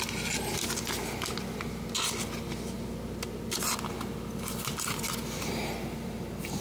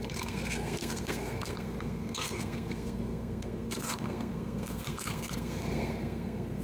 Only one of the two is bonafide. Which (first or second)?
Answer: first